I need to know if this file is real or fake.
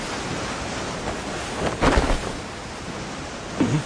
real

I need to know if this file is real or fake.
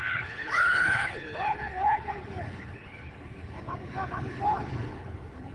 fake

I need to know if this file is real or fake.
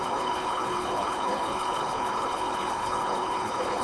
fake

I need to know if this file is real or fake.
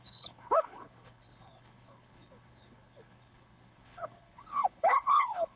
fake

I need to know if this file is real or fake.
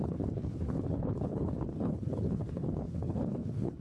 fake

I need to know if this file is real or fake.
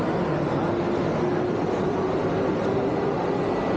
real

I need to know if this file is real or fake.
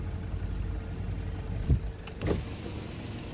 real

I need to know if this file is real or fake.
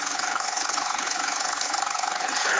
fake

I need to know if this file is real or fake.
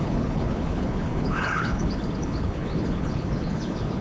fake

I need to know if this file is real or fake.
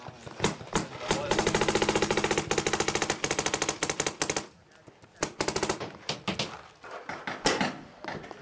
real